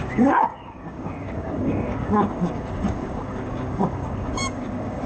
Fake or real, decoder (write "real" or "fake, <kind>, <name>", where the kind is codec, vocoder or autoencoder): fake, codec, DAC